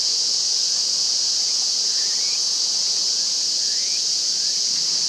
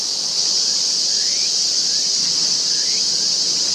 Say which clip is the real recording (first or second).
second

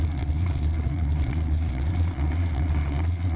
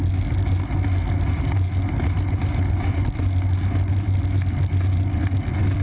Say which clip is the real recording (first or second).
second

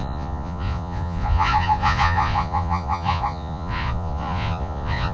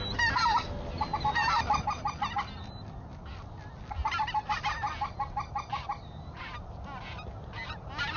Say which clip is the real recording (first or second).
second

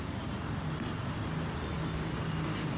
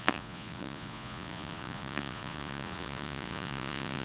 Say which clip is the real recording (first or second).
first